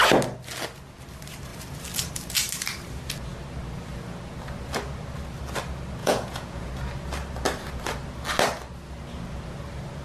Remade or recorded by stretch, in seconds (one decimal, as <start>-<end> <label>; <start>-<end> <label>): 0.0-6.0 recorded; 6.0-6.7 remade; 6.7-10.0 recorded